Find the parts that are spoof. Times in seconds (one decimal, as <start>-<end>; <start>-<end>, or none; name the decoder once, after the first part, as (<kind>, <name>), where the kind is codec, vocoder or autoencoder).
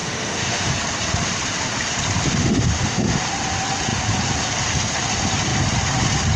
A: 0.0-0.7 (autoencoder, DAC-VAE); 2.4-3.2